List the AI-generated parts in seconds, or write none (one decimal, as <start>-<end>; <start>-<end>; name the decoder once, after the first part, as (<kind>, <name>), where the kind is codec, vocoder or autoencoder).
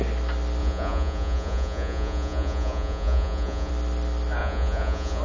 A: 0.6-3.7 (vocoder, Vocos); 4.4-5.2